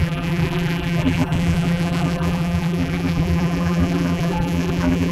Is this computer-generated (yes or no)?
yes